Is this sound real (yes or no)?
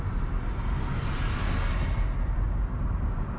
yes